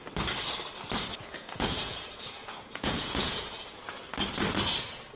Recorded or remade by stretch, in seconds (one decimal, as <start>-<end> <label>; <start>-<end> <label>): 0.0-1.1 recorded; 1.1-3.8 remade; 3.8-5.2 recorded